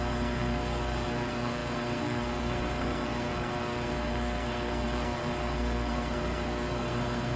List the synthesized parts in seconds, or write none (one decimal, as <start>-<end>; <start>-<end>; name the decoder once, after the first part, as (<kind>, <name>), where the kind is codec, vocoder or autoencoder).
0.0-7.4 (codec, SNAC)